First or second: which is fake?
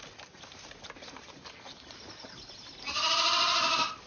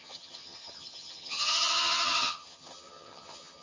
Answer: second